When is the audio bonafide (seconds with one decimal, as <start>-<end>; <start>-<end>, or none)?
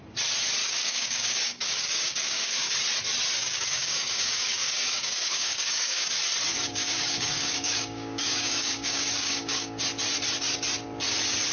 0.0-0.6; 2.7-3.4; 6.1-6.5; 9.8-11.5